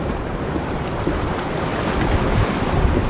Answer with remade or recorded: recorded